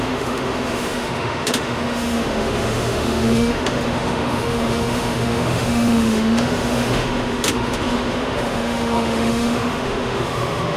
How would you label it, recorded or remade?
remade